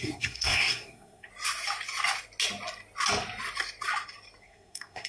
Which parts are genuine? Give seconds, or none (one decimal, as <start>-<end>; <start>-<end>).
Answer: 1.3-4.4